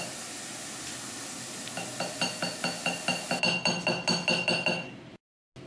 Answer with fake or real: real